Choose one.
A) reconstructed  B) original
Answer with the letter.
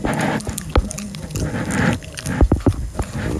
B